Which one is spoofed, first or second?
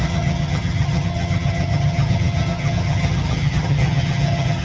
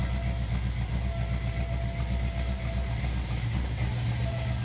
first